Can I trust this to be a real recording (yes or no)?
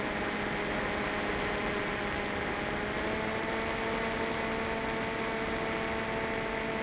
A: yes